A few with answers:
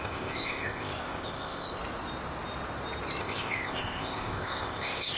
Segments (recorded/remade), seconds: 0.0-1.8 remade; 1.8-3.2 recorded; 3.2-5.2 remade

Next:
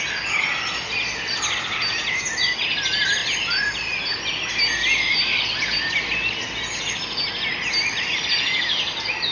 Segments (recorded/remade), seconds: 0.0-9.3 recorded

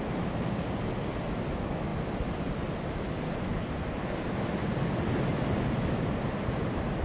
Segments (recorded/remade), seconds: 0.0-7.0 recorded

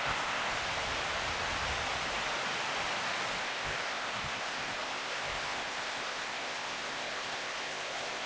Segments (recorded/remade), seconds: 0.0-0.5 remade; 0.5-3.4 recorded; 3.4-8.3 remade

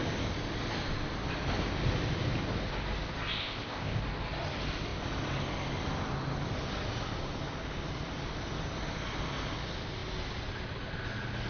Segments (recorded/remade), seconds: 0.0-3.4 recorded; 3.4-4.0 remade; 4.0-11.5 recorded

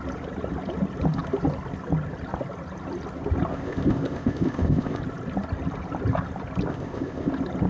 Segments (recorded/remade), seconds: 0.0-3.5 recorded; 3.5-5.0 remade; 5.0-6.7 recorded; 6.7-7.3 remade; 7.3-7.7 recorded

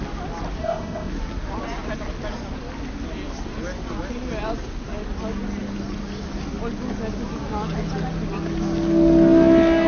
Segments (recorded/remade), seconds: 0.0-0.6 recorded; 0.6-1.1 remade; 1.1-9.9 recorded

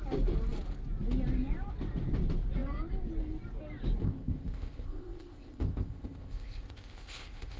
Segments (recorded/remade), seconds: 0.0-4.0 recorded; 4.0-7.6 remade